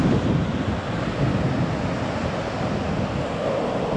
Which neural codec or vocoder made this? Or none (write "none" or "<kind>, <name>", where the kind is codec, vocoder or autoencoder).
none